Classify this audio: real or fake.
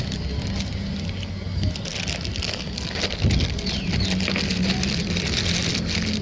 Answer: real